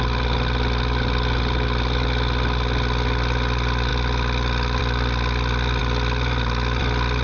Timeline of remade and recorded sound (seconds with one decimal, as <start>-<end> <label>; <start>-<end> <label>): 0.0-7.2 recorded